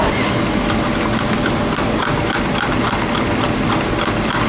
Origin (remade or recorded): recorded